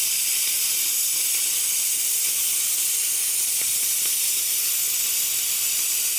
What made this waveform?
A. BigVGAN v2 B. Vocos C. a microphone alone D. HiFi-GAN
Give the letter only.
C